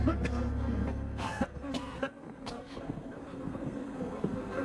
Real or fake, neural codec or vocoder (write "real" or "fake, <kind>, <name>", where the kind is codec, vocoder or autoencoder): fake, codec, SNAC